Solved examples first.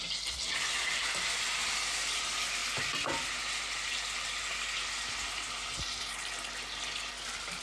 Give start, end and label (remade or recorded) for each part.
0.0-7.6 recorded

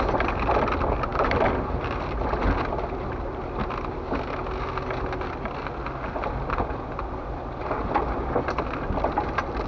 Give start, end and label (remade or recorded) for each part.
0.0-9.7 recorded